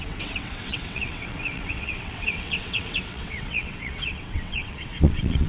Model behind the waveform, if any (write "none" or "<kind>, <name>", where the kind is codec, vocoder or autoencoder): vocoder, WaveNeXt